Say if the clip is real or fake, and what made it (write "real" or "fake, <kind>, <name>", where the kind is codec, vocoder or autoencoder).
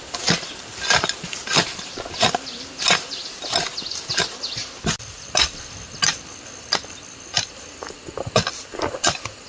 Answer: real